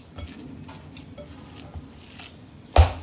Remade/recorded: recorded